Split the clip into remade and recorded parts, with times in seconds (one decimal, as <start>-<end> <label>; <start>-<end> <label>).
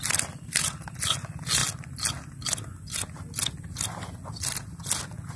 0.0-5.4 recorded